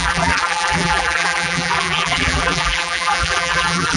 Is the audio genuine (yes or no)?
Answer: no